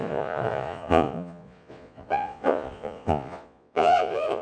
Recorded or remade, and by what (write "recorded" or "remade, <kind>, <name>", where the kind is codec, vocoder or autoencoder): remade, vocoder, Vocos